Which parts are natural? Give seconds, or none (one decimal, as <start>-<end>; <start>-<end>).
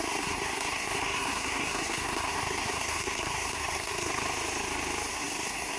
4.1-5.1